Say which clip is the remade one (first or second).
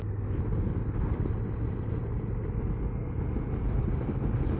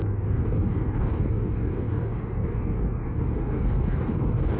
second